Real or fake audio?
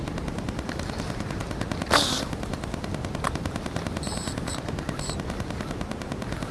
fake